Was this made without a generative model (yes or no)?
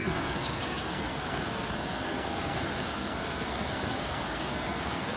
no